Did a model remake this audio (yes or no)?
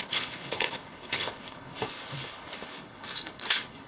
yes